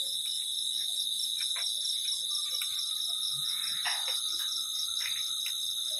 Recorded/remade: recorded